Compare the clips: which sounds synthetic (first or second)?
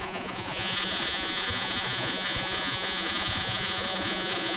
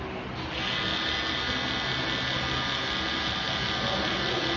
first